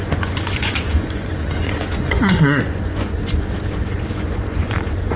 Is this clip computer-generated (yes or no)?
yes